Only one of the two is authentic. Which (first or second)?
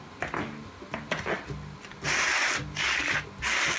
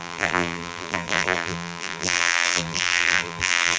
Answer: first